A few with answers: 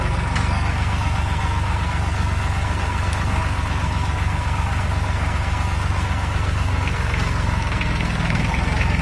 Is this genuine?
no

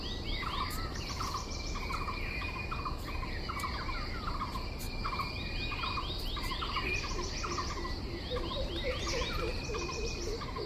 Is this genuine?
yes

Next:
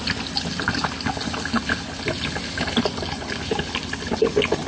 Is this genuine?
yes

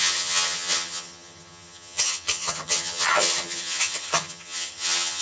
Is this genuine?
no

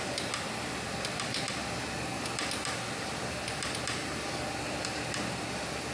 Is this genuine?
yes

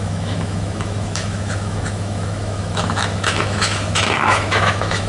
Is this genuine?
no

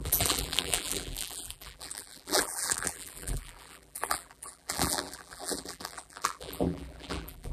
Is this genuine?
no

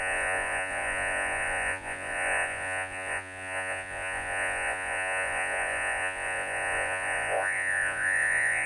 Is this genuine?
no